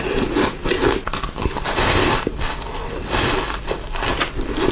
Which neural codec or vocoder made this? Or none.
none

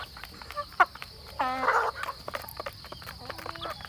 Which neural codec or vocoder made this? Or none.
none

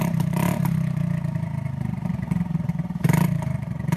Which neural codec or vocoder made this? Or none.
vocoder, BigVGAN v2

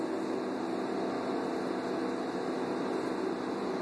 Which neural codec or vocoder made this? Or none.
none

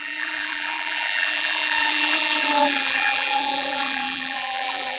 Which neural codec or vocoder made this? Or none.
vocoder, BigVGAN v2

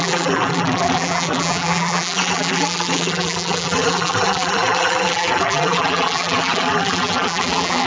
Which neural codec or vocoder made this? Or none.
vocoder, BigVGAN v2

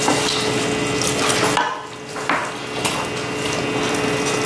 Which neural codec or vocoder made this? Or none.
none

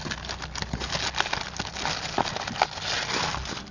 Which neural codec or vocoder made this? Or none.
none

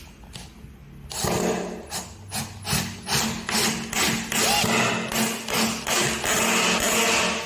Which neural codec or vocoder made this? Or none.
none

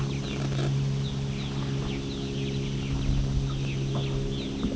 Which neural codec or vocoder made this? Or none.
none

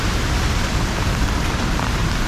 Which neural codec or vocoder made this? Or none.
vocoder, BigVGAN v2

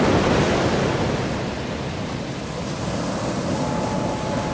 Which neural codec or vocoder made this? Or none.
none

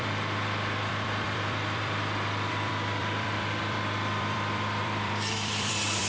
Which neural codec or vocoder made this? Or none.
vocoder, BigVGAN v2